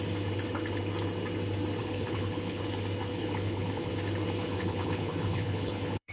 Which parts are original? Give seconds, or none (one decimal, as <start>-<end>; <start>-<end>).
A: 0.0-1.8; 2.6-3.1; 3.9-4.4